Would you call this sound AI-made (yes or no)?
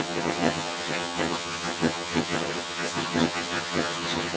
yes